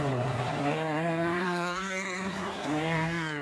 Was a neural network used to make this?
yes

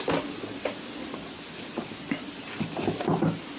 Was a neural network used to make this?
no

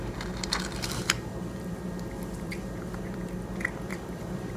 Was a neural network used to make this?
yes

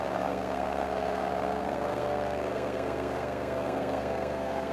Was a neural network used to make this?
yes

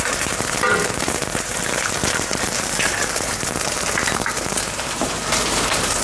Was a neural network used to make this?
yes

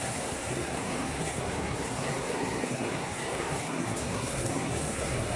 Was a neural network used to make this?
yes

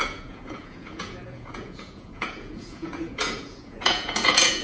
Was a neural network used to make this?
yes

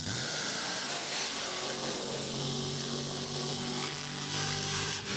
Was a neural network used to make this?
yes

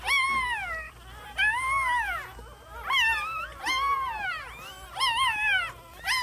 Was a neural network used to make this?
no